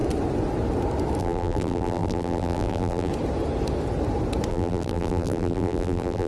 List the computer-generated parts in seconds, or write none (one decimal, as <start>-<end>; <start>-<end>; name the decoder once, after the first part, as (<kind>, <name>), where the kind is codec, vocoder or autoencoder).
1.2-3.1 (vocoder, BigVGAN v2); 4.5-6.3